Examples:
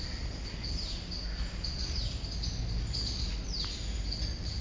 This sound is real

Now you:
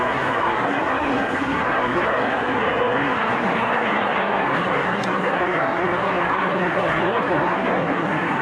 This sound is fake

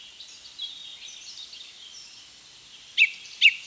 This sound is real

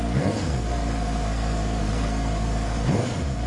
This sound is fake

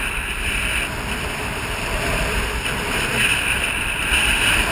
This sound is fake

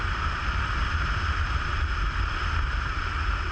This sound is real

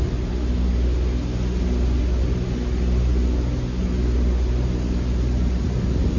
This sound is real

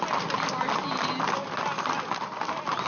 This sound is real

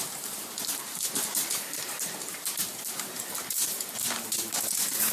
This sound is fake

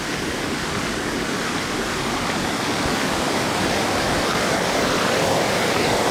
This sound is fake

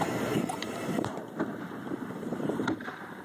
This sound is fake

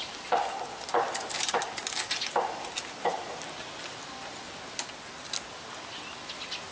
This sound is real